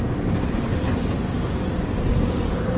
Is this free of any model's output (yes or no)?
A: yes